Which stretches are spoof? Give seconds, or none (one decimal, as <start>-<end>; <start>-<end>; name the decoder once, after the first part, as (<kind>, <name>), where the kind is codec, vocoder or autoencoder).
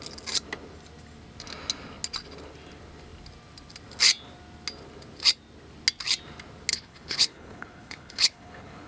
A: 6.7-8.9 (codec, HILCodec)